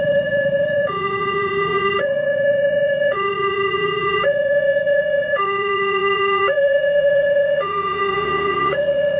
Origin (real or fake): fake